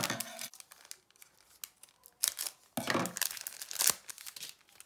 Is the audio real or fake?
real